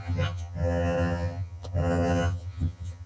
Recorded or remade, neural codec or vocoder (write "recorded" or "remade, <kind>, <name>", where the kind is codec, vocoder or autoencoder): remade, vocoder, HiFi-GAN